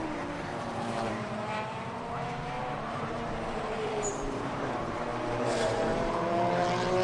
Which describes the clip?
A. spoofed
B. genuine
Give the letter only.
A